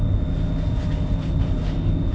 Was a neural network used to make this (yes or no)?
no